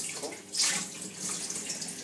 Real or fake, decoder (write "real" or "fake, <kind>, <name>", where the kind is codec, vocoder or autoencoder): real